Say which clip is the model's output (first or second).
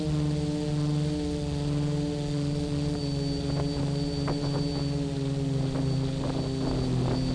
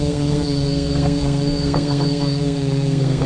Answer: second